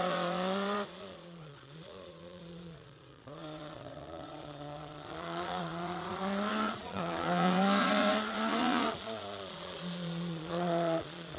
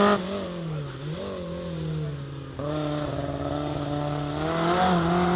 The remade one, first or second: first